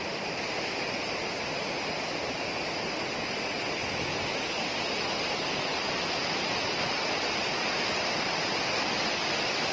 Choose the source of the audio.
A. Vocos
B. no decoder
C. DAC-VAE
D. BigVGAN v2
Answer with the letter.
B